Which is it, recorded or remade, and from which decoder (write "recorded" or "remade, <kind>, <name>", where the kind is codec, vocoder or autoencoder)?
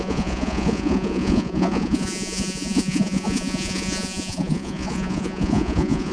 remade, vocoder, Vocos